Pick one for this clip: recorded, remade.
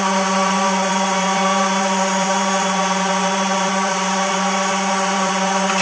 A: remade